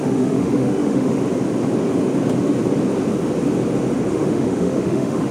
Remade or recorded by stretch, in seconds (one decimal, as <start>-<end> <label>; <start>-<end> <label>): 0.0-1.2 remade; 1.2-4.1 recorded; 4.1-5.3 remade